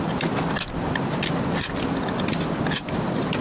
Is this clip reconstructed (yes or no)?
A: no